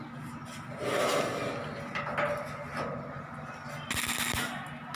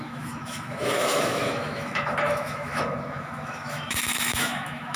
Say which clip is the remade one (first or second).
second